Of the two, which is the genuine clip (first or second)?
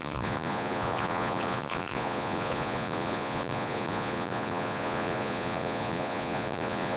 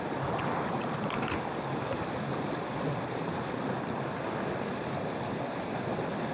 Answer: second